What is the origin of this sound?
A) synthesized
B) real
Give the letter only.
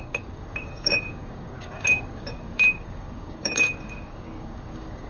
A